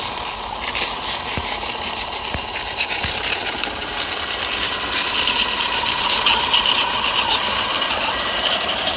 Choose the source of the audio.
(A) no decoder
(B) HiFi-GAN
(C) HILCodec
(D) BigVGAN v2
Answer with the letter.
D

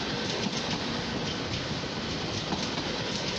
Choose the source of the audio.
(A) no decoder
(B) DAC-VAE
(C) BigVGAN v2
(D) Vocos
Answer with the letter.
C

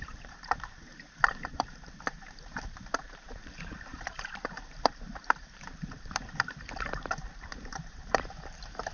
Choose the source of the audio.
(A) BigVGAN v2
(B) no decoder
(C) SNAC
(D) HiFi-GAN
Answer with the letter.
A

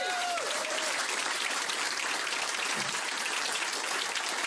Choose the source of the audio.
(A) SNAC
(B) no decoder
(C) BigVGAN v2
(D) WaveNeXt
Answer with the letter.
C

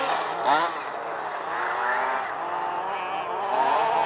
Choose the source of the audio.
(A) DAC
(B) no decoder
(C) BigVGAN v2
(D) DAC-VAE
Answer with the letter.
B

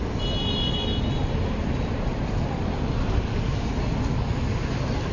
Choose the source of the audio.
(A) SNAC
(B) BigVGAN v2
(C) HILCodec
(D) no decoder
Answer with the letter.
D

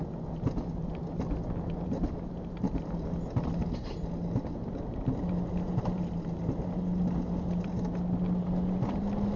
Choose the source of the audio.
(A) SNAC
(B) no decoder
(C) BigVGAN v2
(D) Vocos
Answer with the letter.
B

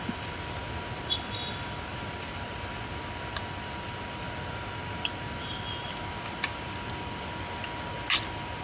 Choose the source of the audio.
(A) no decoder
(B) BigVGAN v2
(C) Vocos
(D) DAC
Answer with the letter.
A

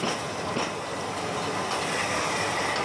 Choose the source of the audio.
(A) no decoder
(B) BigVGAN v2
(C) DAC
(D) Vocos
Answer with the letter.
A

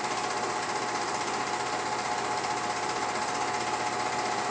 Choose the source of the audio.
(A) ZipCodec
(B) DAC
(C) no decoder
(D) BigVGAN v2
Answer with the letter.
D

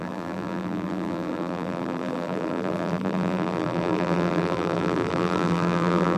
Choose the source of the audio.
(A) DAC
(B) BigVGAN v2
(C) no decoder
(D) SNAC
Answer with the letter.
B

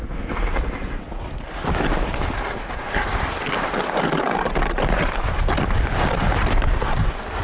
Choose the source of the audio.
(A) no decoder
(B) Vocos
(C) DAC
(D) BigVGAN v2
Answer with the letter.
A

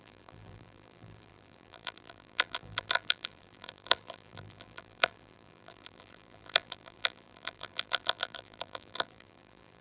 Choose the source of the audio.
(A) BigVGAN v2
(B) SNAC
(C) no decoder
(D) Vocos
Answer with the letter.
A